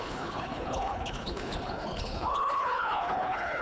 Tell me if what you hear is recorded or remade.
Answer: remade